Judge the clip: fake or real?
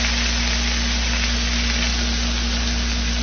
real